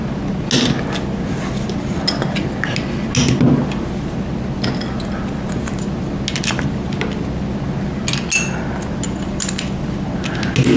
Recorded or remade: recorded